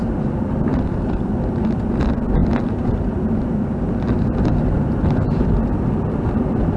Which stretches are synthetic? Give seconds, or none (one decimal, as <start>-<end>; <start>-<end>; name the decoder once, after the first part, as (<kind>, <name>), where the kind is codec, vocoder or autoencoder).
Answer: none